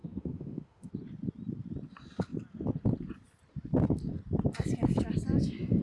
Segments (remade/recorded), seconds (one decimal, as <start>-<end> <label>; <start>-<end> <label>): 0.0-0.9 remade; 0.9-5.8 recorded